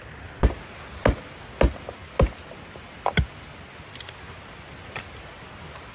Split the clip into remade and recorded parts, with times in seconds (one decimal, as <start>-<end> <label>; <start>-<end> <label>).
0.0-5.9 recorded